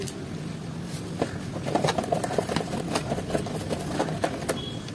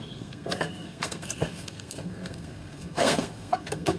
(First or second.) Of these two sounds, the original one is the first